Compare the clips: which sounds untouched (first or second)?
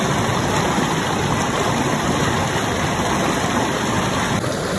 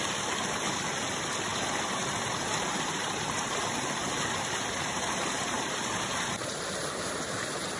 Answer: first